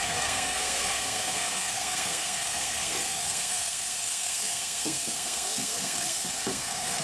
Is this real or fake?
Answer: fake